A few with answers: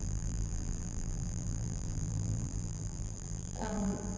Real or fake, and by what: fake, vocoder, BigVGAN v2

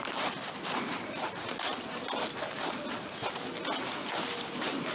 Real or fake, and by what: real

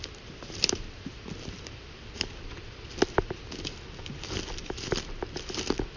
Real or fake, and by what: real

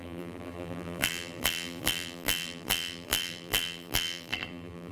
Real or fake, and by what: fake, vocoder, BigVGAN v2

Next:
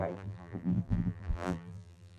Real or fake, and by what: fake, vocoder, BigVGAN v2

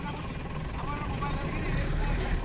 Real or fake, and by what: fake, vocoder, BigVGAN v2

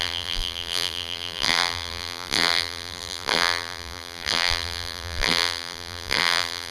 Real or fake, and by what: fake, vocoder, BigVGAN v2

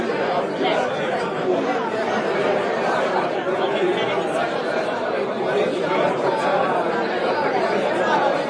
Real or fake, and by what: fake, vocoder, BigVGAN v2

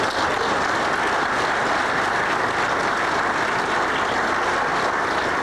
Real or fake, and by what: real